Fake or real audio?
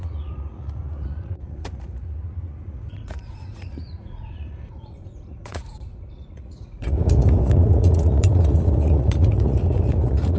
fake